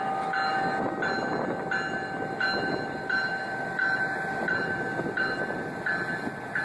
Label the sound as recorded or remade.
recorded